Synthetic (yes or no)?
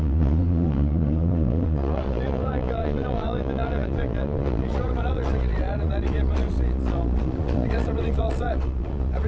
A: yes